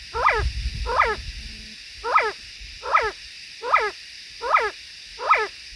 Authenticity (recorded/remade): recorded